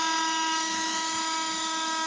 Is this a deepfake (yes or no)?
yes